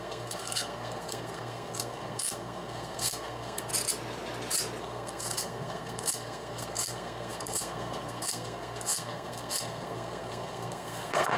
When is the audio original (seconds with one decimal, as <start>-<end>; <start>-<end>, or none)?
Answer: 3.7-4.8